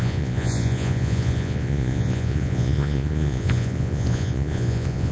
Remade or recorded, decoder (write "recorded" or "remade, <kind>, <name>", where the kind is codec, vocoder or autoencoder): remade, vocoder, Vocos